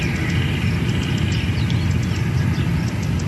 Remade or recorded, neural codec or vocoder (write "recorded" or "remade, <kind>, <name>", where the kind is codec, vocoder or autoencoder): recorded